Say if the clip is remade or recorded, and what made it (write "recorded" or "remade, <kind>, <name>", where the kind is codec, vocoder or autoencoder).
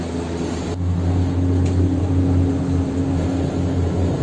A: recorded